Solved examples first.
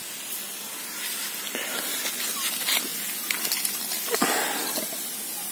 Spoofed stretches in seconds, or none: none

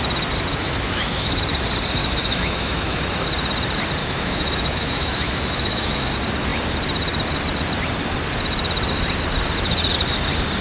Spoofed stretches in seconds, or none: 0.5-1.4 (autoencoder, DAC-VAE); 2.0-3.0; 4.0-6.1

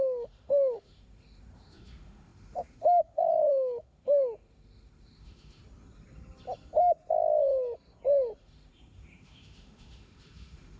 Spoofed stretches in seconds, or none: 0.0-5.6 (autoencoder, DAC-VAE); 8.4-10.8